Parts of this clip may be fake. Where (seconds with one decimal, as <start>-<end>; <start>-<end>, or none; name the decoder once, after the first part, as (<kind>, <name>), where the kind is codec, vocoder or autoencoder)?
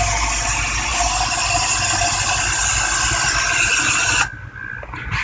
none